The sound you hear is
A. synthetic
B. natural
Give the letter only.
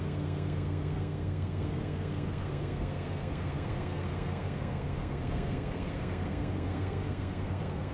A